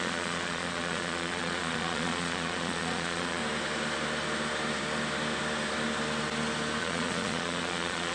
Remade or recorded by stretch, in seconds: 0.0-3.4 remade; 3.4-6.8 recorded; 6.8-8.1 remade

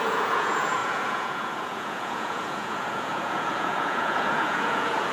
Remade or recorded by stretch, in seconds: 0.0-5.1 remade